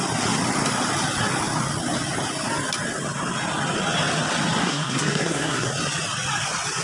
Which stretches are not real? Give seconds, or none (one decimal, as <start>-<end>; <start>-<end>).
4.6-5.7

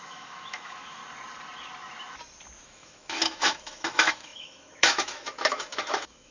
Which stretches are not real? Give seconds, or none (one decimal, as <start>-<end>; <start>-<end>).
0.0-1.0; 2.6-6.3